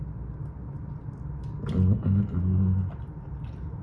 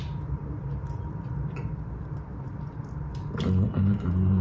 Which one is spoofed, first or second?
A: second